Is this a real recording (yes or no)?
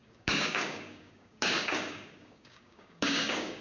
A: no